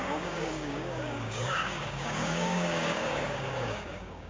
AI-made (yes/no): yes